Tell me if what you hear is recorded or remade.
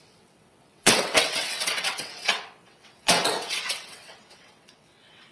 remade